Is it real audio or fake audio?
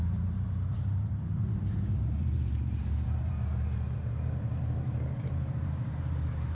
fake